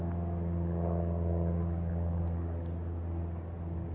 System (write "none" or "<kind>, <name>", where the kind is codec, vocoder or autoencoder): none